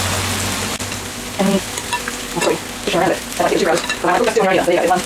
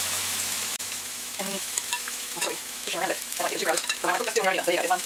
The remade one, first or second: second